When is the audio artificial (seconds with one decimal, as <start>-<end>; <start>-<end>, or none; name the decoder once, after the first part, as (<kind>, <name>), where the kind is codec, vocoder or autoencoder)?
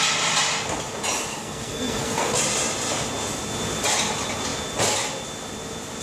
1.3-2.3 (codec, SNAC)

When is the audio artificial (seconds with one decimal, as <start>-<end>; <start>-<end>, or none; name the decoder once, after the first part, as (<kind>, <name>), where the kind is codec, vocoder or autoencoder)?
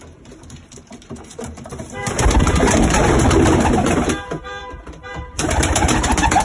0.0-2.0 (vocoder, BigVGAN v2); 2.8-3.8; 4.6-6.4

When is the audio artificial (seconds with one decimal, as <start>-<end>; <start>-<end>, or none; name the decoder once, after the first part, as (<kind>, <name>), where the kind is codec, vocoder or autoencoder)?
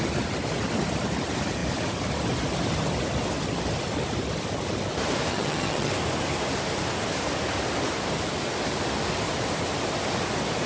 5.3-5.9 (vocoder, HiFi-GAN)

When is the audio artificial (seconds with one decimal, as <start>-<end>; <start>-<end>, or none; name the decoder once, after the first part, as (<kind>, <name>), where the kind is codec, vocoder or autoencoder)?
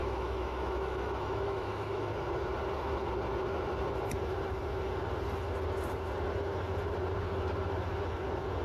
0.0-2.1 (autoencoder, DAC-VAE)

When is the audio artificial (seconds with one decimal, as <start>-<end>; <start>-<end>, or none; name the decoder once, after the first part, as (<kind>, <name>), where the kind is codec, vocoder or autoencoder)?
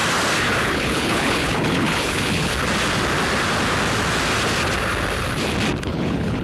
0.6-2.5 (codec, HILCodec); 5.8-6.4